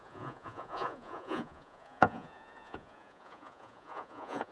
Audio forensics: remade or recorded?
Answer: remade